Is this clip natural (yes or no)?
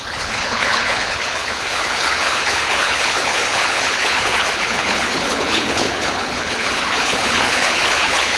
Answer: no